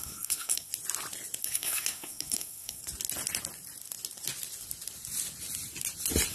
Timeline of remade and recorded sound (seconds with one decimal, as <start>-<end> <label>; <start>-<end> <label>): 0.0-0.7 remade; 0.7-1.4 recorded; 1.4-2.8 remade; 2.8-6.3 recorded